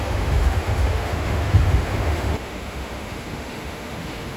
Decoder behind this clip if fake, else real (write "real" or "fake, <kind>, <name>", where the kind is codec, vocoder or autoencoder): fake, autoencoder, DAC-VAE